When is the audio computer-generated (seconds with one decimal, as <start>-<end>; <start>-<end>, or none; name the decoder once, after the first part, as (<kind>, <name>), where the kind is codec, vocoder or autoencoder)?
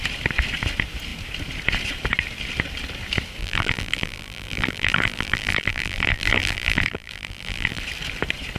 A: 3.4-7.8 (vocoder, BigVGAN v2)